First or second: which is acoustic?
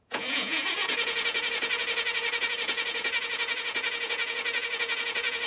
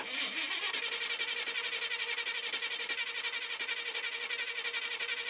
second